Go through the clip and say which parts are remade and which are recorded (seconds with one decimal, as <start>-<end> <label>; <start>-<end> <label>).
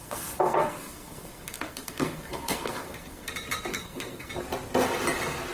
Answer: 0.0-3.3 remade; 3.3-3.7 recorded; 3.7-4.3 remade; 4.3-5.5 recorded